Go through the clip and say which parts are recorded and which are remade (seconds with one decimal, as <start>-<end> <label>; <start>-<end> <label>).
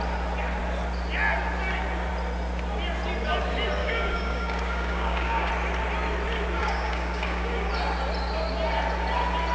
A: 0.0-3.8 recorded; 3.8-5.5 remade; 5.5-6.6 recorded; 6.6-7.7 remade; 7.7-9.5 recorded